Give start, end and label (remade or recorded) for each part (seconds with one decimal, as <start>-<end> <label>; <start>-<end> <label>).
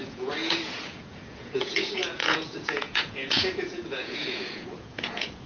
0.0-5.5 remade